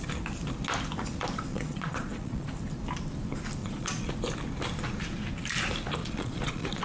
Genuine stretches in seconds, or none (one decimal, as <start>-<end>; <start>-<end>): 0.0-1.5; 2.5-3.6; 4.1-6.0